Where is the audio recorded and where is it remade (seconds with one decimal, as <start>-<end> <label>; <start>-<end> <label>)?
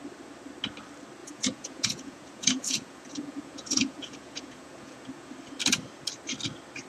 0.0-1.2 recorded; 1.2-5.3 remade; 5.3-6.9 recorded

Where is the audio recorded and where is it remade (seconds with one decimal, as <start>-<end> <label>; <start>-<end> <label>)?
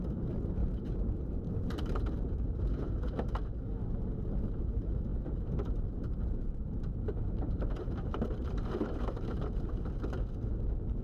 0.0-0.6 recorded; 0.6-2.7 remade; 2.7-5.1 recorded; 5.1-9.9 remade; 9.9-11.0 recorded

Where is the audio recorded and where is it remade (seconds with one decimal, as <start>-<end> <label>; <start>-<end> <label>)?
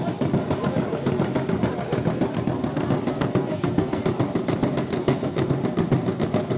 0.0-3.1 recorded; 3.1-4.0 remade; 4.0-4.9 recorded; 4.9-5.5 remade; 5.5-6.6 recorded